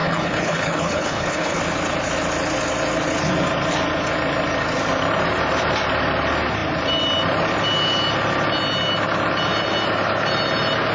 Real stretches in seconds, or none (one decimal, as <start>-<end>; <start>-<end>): 1.6-10.9